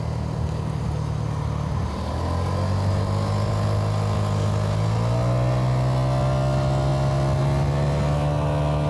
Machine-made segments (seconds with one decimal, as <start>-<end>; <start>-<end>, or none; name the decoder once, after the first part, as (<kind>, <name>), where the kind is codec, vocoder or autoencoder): none